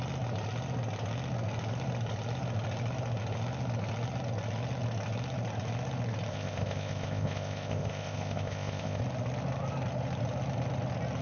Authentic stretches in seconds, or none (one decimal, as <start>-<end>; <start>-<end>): 0.0-6.3; 9.0-11.2